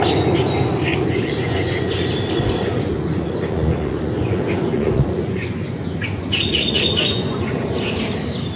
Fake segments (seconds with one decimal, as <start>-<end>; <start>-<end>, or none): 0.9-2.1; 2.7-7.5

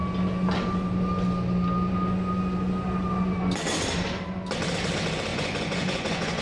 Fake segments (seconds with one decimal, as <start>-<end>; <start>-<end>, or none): 5.3-6.4

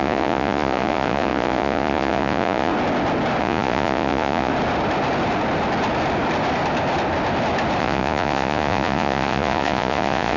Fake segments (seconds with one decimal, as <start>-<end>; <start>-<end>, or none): 0.0-2.7; 3.4-4.5; 7.8-10.4

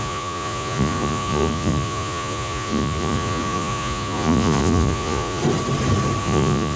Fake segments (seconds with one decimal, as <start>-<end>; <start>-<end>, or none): 0.0-5.4; 6.2-6.8

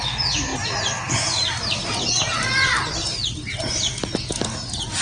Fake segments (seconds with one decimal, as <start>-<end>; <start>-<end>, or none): none

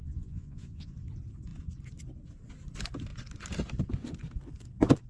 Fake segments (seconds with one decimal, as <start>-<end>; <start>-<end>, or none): 0.0-0.9

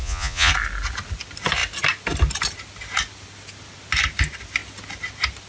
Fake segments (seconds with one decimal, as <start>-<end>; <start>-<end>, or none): 0.0-0.5

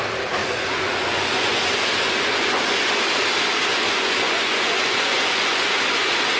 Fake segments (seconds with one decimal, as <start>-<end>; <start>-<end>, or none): 0.4-2.9; 3.7-5.7